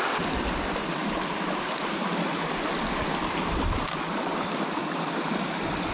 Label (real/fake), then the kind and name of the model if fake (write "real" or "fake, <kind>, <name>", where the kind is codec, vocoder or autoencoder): real